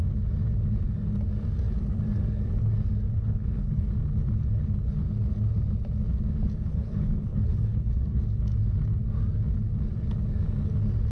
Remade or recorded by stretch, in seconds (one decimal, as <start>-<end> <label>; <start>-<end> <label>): 0.0-3.1 recorded; 3.1-3.9 remade; 3.9-6.7 recorded; 6.7-8.2 remade; 8.2-11.1 recorded